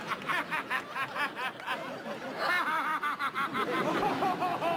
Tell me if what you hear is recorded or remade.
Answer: recorded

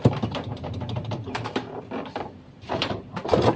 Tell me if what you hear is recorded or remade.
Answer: remade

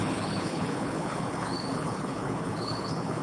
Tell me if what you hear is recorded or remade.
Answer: remade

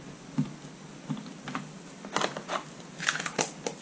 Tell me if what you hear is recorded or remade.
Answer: recorded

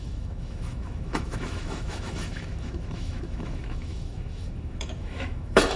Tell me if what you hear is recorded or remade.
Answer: remade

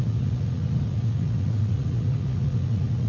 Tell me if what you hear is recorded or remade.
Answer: remade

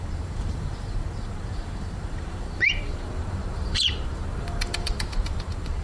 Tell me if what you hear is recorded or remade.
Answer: remade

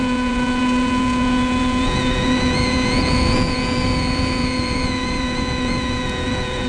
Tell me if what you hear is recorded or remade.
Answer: remade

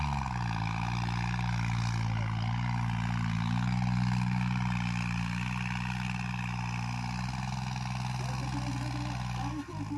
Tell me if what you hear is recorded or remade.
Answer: recorded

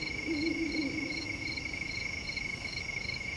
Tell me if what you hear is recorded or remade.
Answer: remade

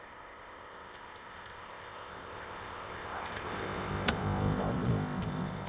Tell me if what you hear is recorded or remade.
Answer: remade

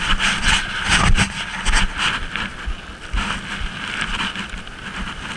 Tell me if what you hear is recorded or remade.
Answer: recorded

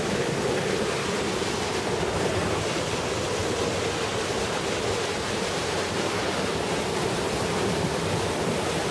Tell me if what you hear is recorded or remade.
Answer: recorded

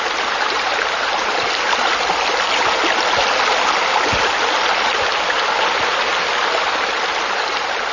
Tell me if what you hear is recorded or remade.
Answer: recorded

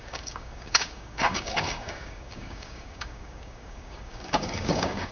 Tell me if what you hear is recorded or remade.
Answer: remade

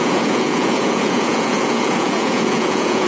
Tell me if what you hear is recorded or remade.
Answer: remade